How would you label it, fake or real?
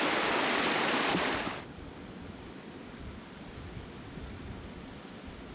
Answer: real